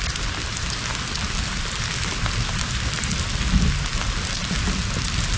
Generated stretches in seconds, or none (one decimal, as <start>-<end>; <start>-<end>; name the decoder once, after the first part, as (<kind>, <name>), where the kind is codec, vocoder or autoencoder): none